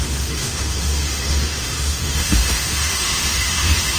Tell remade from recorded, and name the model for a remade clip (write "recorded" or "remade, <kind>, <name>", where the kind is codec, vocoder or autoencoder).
remade, autoencoder, DAC-VAE